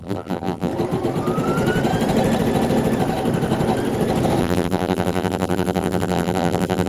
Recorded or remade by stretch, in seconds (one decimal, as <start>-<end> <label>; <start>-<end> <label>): 0.0-0.7 remade; 0.7-4.4 recorded; 4.4-6.9 remade